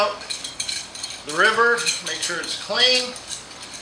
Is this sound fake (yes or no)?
yes